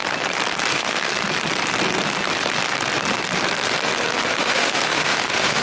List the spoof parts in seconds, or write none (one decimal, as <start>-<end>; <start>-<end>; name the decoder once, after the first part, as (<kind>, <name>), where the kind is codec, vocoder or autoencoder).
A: 0.7-1.1 (autoencoder, DAC-VAE); 4.4-5.6